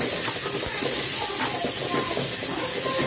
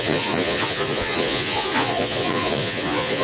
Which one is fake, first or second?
second